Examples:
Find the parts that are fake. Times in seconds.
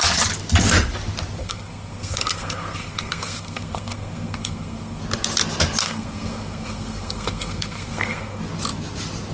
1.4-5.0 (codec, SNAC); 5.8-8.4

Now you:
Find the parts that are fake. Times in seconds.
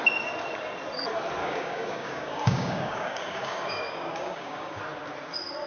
1.4-4.8 (codec, DAC)